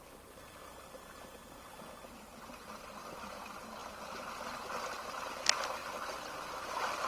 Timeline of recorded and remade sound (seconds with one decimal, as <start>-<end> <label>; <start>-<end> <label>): 0.0-0.6 recorded; 0.6-1.6 remade; 1.6-2.0 recorded; 2.0-2.6 remade; 2.6-7.1 recorded